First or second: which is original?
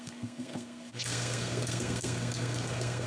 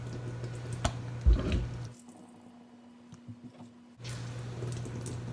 second